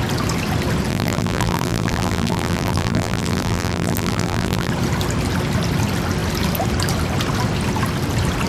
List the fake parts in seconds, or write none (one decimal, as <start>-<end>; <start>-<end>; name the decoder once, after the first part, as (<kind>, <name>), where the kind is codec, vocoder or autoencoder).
0.9-4.7 (vocoder, BigVGAN v2)